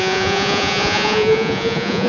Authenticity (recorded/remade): remade